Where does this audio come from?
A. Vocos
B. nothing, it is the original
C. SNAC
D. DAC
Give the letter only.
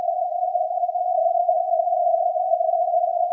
A